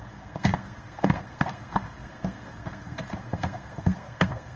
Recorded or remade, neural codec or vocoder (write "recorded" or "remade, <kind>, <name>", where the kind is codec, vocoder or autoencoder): remade, codec, SNAC